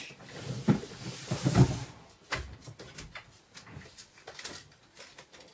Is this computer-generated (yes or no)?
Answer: no